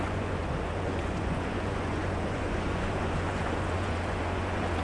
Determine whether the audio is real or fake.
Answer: fake